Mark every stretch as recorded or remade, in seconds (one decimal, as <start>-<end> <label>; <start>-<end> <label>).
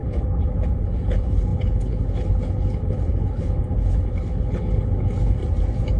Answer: 0.0-5.4 remade; 5.4-6.0 recorded